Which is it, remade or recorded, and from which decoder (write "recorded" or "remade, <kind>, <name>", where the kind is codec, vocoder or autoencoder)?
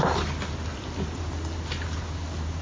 recorded